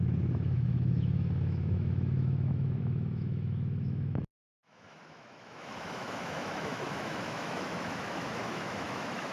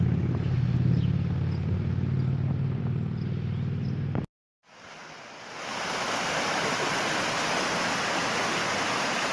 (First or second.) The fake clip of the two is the first